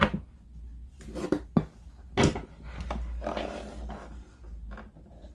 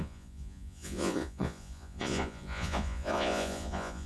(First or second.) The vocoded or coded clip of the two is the second